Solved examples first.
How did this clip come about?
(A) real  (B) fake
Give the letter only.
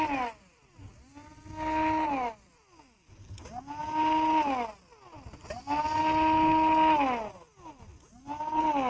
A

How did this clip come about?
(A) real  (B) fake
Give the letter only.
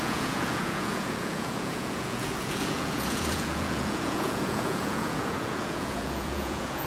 B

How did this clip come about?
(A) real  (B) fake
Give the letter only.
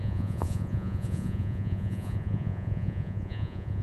B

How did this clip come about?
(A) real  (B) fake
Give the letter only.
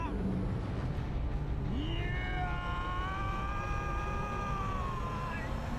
A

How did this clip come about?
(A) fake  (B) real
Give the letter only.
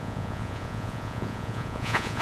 A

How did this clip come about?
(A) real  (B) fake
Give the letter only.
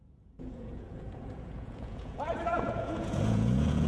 B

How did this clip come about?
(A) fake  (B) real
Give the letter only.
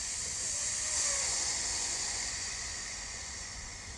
A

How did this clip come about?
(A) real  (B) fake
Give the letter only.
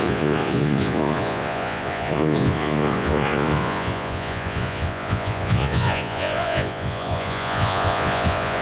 B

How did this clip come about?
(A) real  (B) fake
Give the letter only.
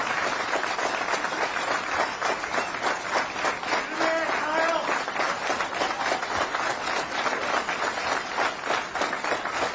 A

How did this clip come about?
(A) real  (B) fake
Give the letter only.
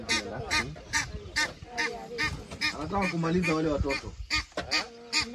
A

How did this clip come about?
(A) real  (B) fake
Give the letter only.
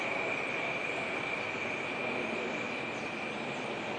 A